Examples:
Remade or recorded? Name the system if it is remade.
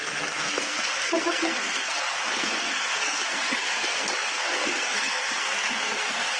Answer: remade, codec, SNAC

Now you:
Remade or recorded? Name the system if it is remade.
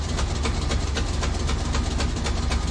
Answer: recorded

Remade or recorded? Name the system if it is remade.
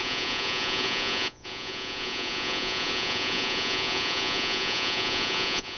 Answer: remade, vocoder, Vocos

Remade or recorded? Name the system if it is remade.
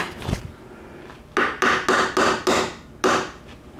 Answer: recorded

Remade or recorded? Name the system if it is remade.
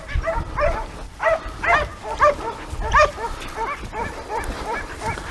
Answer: recorded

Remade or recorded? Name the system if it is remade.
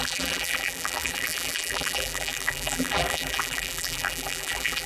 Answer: remade, vocoder, BigVGAN v2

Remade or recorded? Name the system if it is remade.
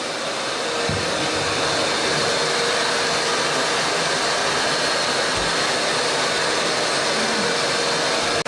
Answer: recorded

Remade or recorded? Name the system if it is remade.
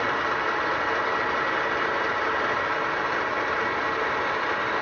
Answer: recorded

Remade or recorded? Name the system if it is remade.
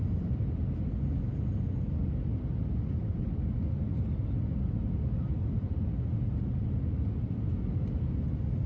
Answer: recorded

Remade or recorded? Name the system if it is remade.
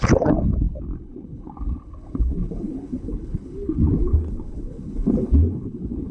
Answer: remade, codec, HILCodec